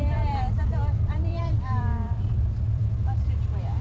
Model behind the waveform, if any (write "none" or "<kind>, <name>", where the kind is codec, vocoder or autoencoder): vocoder, BigVGAN v2